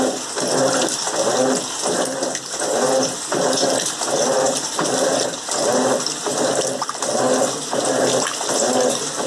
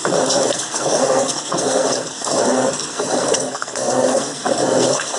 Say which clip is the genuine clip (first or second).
first